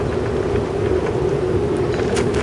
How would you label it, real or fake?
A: real